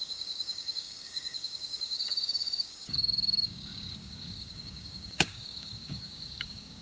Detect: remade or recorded remade